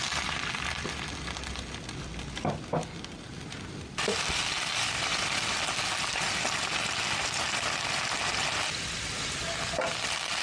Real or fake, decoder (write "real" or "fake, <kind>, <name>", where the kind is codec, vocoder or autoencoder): real